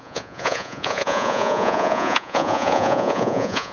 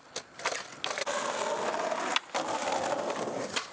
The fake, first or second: first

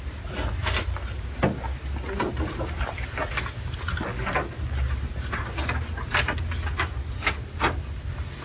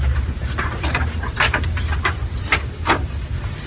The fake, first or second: second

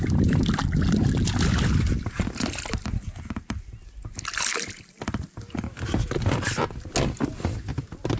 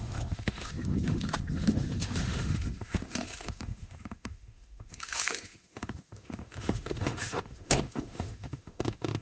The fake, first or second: second